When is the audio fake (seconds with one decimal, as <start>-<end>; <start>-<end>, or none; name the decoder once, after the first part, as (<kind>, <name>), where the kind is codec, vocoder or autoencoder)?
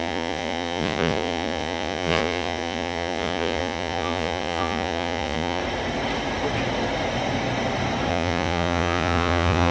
0.0-5.6 (vocoder, Vocos); 8.1-9.7